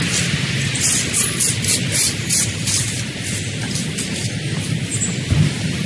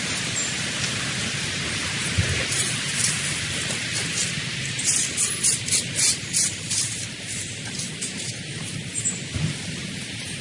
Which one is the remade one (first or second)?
second